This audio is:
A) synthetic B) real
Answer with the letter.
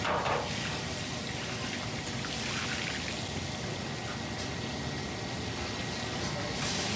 B